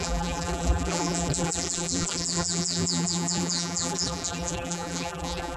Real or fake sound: fake